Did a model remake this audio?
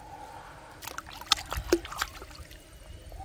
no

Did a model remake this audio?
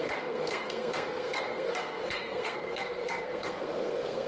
yes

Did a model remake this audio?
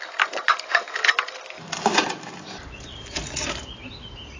no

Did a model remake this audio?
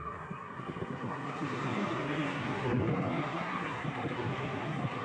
yes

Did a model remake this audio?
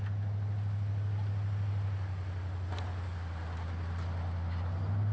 no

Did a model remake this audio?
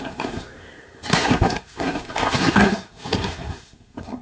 yes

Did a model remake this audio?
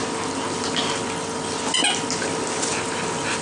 no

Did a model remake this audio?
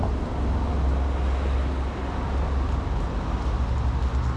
no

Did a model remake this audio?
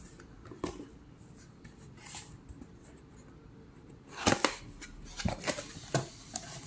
no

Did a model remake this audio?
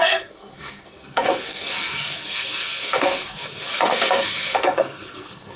yes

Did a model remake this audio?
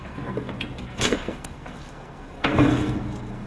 yes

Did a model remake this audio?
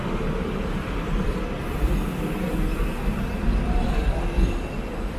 no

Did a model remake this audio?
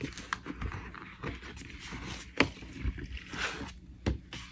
no